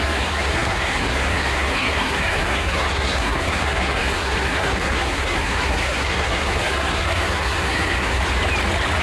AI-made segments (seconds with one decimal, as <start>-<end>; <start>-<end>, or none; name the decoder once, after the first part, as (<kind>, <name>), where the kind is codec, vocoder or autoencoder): 0.0-8.2 (codec, SNAC)